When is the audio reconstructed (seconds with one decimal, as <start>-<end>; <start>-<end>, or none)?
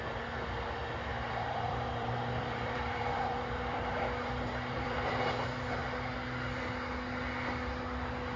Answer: 1.1-5.2